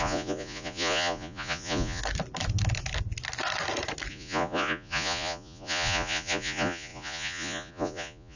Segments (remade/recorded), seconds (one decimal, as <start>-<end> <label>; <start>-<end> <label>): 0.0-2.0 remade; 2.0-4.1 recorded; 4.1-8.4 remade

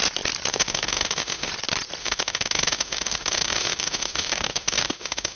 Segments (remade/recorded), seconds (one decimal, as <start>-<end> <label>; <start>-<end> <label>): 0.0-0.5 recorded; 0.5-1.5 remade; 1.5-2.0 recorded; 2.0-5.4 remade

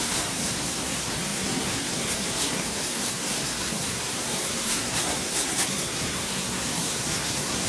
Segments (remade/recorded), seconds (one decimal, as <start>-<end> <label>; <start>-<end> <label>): 0.0-7.7 remade

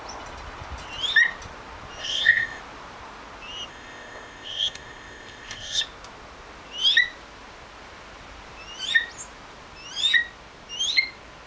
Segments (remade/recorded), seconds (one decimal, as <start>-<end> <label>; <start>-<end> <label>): 0.0-2.0 recorded; 2.0-2.6 remade; 2.6-3.7 recorded; 3.7-5.8 remade; 5.8-11.5 recorded

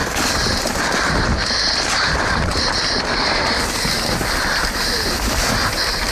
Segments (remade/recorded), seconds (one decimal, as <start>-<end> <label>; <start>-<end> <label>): 0.0-6.1 recorded

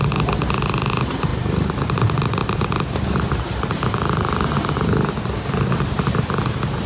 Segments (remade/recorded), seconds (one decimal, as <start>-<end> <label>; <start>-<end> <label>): 0.0-1.3 remade; 1.3-1.8 recorded; 1.8-6.9 remade